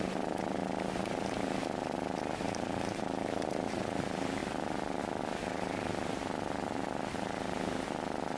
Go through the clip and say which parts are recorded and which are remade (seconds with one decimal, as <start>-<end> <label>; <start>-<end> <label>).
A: 0.0-0.6 recorded; 0.6-4.0 remade; 4.0-8.4 recorded